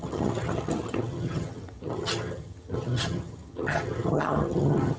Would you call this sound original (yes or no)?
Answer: no